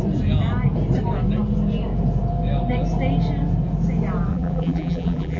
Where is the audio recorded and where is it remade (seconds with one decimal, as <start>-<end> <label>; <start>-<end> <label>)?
0.0-4.3 recorded; 4.3-5.4 remade